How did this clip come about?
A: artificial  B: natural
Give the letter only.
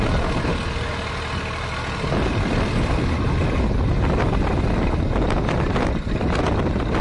B